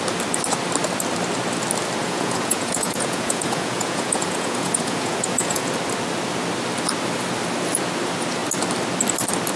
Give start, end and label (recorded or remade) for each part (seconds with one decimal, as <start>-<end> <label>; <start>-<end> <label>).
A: 0.0-2.0 recorded; 2.0-5.7 remade; 5.7-9.6 recorded